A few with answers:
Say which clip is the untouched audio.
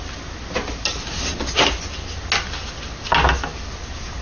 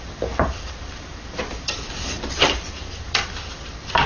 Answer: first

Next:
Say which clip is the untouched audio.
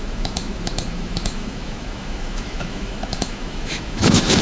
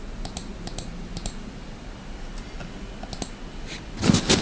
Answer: second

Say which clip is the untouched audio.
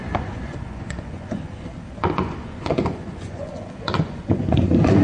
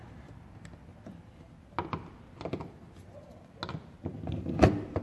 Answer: second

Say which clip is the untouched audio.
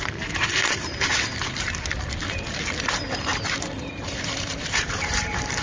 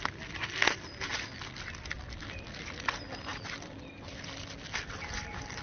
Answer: second